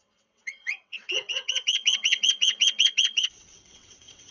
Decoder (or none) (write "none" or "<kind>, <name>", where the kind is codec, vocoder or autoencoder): vocoder, WaveNeXt